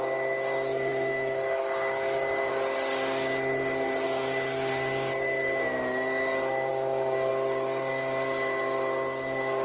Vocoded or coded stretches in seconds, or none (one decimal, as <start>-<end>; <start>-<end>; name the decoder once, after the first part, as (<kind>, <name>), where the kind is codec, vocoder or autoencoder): 0.9-2.5 (autoencoder, DAC-VAE)